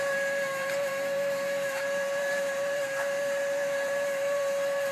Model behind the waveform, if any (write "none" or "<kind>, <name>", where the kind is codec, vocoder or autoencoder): vocoder, BigVGAN v2